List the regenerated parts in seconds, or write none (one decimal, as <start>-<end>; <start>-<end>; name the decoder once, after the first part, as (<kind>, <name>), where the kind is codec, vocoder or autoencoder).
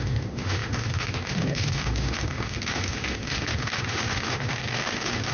0.0-5.3 (autoencoder, DAC-VAE)